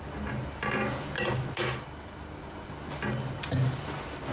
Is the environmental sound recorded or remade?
recorded